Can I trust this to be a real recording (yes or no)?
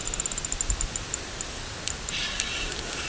yes